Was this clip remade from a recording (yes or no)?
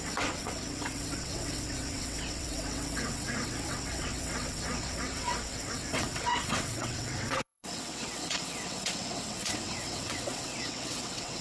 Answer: yes